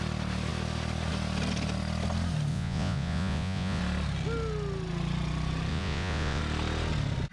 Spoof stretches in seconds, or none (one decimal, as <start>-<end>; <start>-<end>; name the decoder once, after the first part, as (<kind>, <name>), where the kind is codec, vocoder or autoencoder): 2.5-3.8 (vocoder, Vocos); 5.7-6.4